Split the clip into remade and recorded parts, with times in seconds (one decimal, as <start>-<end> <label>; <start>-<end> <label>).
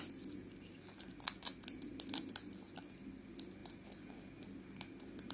0.0-5.3 recorded